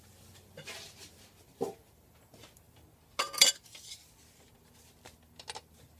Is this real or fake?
real